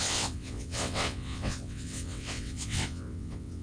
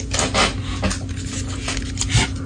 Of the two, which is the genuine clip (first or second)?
second